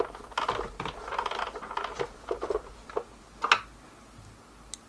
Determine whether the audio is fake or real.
real